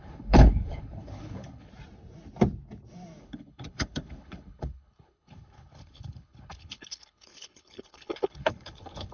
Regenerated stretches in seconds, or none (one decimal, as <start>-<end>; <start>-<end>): 0.0-1.7; 3.2-9.1

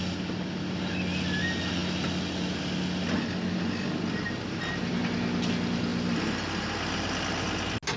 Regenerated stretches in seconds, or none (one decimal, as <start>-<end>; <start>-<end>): none

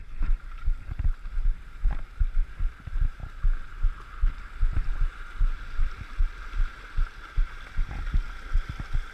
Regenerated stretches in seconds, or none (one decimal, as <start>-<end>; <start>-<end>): none

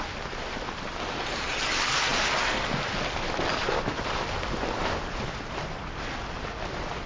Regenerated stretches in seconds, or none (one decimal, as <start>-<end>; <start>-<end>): none

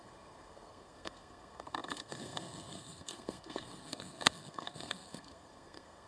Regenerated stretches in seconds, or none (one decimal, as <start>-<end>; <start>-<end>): 0.0-6.1

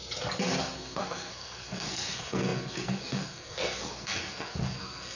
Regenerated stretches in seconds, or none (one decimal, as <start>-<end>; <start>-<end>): 0.6-5.2

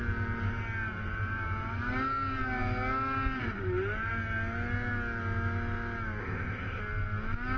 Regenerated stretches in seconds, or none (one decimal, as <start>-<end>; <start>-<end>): 6.2-6.8

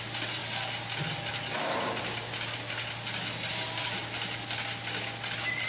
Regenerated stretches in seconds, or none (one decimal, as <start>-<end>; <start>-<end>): none